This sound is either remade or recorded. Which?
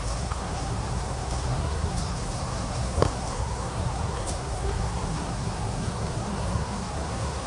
remade